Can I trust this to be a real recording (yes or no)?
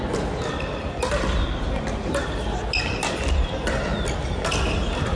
yes